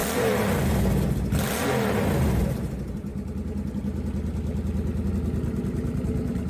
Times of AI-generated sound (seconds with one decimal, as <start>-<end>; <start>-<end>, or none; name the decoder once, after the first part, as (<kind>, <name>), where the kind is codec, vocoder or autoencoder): none